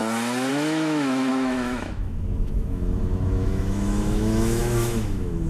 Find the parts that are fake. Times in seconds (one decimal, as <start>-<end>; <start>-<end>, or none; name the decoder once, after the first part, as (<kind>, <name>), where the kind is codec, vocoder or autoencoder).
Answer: 0.5-5.5 (autoencoder, DAC-VAE)